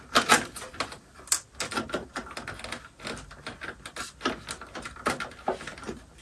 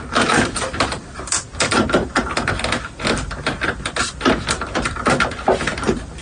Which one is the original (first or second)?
first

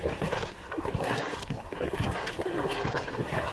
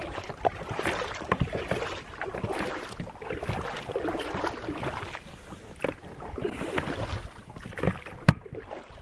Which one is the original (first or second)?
second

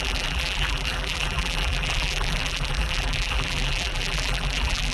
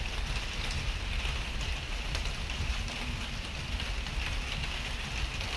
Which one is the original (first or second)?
second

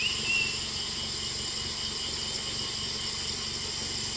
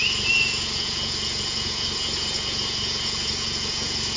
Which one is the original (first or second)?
first